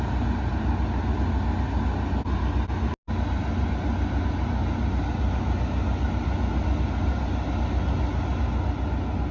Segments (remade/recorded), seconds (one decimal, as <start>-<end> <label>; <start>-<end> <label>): 0.0-9.3 recorded